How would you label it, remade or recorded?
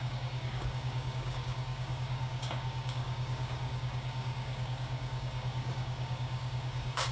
remade